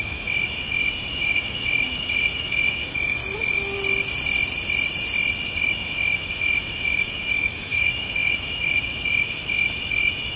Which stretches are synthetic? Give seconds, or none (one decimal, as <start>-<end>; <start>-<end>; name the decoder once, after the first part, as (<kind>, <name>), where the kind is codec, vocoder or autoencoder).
0.0-3.2 (autoencoder, DAC-VAE); 5.6-10.4